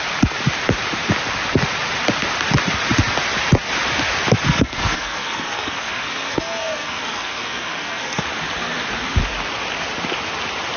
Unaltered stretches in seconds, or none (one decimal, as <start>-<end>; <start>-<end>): 0.0-4.5; 8.2-10.8